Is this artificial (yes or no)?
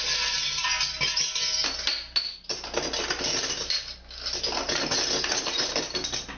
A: no